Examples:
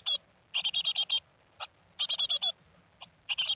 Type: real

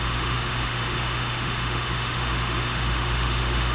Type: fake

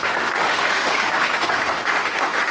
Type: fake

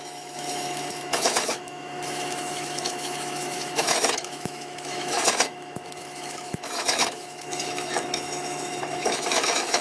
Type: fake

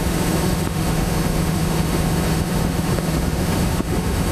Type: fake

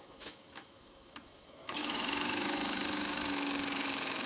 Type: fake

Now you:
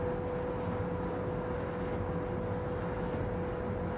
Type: real